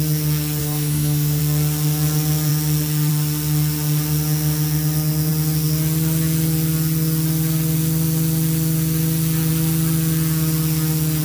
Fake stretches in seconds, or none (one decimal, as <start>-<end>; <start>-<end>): 0.6-1.4

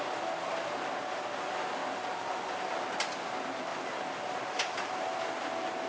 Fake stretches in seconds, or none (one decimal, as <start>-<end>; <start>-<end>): none

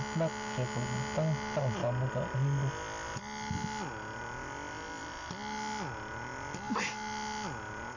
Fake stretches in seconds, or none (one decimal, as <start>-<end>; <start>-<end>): none

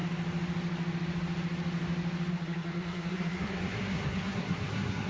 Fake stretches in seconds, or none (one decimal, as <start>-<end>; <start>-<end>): 2.3-5.1

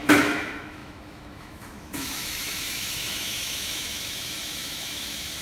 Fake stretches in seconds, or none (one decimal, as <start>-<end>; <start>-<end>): 0.0-5.4

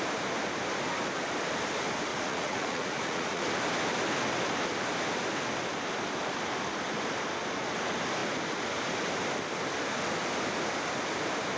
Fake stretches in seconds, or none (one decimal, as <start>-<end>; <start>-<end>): 2.1-3.4

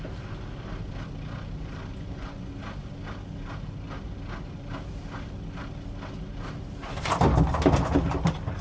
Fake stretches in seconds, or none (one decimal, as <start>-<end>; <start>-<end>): 1.9-2.5

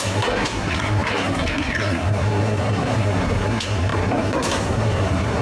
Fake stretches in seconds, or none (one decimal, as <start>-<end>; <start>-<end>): 0.0-5.4